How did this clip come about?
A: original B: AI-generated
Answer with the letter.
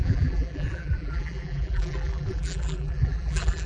B